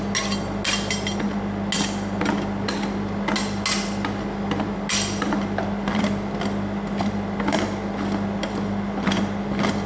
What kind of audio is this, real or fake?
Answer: real